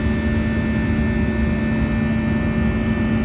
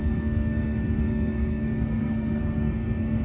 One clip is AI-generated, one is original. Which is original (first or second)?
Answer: first